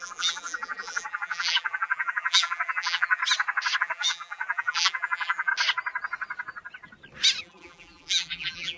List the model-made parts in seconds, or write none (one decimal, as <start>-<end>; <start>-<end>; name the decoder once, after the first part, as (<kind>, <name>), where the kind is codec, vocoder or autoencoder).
0.0-3.2 (vocoder, BigVGAN v2); 3.8-5.5; 7.4-8.8